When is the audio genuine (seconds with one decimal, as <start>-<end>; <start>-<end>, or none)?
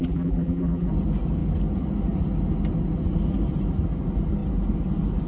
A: 0.9-5.3